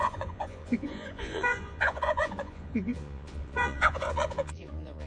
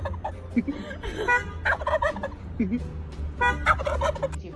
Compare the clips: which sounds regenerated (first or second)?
first